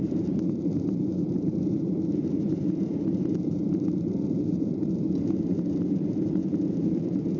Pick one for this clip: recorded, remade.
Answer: remade